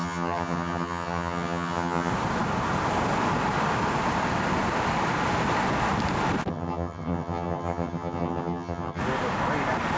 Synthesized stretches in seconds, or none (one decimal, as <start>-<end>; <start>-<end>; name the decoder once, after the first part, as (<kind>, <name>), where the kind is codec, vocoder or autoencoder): 0.0-2.1 (vocoder, HiFi-GAN); 6.5-9.0